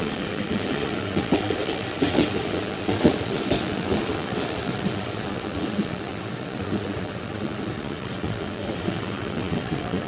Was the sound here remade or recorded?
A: remade